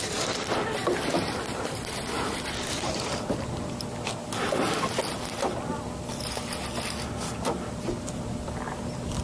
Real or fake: real